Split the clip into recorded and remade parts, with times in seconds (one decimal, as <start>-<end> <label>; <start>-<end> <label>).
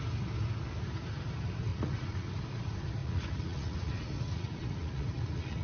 0.0-1.7 recorded; 1.7-2.3 remade; 2.3-3.0 recorded; 3.0-5.6 remade